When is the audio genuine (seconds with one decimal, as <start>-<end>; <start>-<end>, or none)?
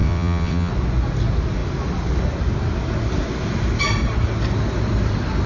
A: 0.7-5.5